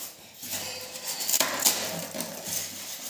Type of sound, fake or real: fake